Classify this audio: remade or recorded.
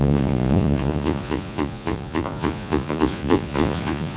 remade